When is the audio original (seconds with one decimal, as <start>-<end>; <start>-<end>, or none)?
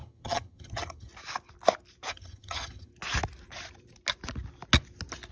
1.1-2.1; 2.9-5.3